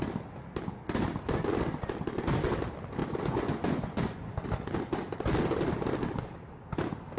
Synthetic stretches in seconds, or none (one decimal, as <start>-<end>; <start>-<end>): 3.0-4.3